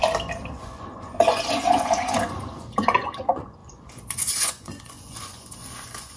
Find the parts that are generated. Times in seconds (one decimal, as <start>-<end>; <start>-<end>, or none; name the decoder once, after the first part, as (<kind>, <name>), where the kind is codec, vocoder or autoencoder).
0.5-6.2 (vocoder, Vocos)